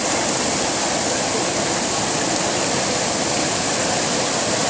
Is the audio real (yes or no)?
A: no